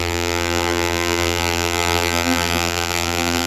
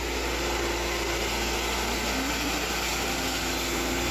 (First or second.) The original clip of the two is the second